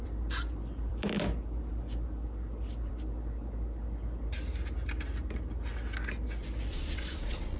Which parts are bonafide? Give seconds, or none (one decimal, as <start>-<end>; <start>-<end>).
0.0-6.7